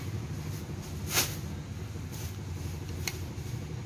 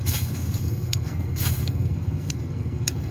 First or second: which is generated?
second